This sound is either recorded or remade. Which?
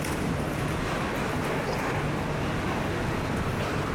recorded